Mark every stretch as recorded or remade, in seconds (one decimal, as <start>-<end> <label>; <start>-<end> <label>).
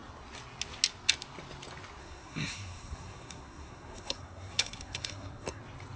0.0-2.0 recorded; 2.0-5.6 remade; 5.6-6.0 recorded